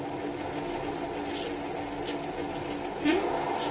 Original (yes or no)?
yes